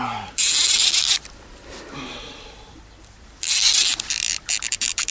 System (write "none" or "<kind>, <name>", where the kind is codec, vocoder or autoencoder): vocoder, BigVGAN v2